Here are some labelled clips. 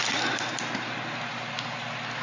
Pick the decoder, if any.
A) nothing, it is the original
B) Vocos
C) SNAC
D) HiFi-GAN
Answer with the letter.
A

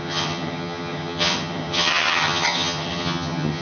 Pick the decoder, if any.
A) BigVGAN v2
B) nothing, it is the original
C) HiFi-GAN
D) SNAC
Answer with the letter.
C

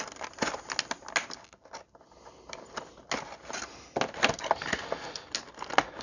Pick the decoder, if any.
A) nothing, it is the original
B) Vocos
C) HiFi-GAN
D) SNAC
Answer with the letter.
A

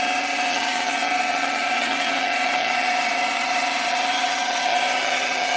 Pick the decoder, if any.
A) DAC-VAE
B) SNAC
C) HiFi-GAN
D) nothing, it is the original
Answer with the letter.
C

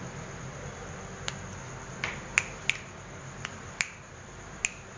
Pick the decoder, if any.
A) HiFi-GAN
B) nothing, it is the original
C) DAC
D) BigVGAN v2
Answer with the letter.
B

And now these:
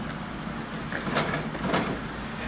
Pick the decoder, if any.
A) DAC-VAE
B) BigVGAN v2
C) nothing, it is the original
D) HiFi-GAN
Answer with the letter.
C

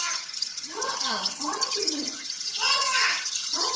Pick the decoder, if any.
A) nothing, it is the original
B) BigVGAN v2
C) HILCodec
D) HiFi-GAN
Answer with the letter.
D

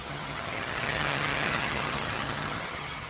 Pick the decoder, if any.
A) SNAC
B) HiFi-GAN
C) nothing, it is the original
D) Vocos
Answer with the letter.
B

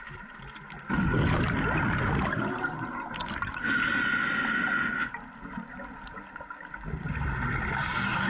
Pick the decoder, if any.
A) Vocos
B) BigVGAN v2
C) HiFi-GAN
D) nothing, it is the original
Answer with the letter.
D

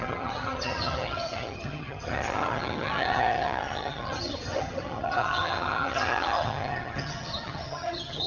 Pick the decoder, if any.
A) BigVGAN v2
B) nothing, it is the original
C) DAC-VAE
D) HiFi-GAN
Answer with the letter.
D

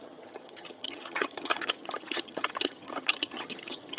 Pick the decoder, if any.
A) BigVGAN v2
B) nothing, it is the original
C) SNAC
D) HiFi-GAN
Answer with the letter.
D